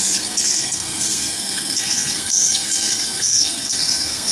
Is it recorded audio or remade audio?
remade